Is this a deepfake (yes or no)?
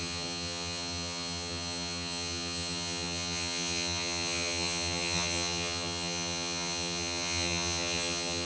yes